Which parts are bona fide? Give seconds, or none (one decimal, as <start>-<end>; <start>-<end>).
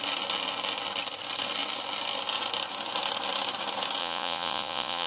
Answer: 0.0-4.0